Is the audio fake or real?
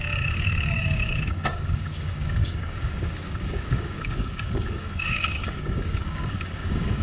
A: fake